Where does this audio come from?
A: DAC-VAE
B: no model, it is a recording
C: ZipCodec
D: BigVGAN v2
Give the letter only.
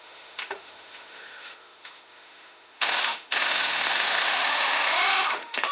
A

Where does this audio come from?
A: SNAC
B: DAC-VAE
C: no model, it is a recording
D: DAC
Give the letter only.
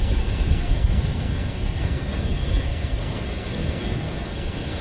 A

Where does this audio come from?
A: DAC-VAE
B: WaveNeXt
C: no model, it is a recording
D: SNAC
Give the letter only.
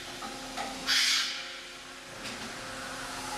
C